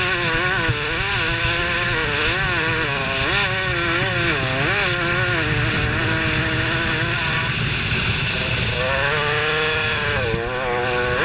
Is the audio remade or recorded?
recorded